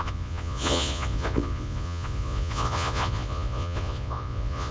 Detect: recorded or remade remade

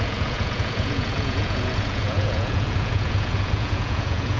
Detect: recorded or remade remade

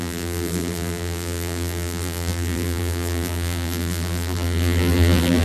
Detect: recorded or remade remade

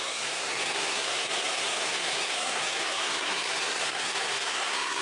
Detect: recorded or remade remade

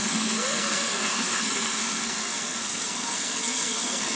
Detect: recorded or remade remade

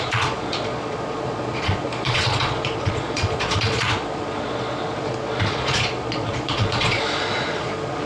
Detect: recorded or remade remade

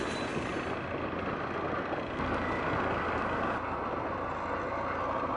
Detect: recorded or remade recorded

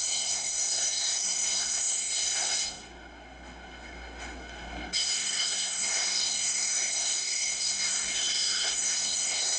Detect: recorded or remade remade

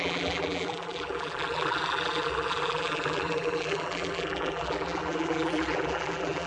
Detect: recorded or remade remade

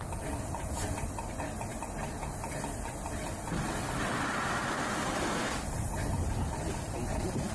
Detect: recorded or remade recorded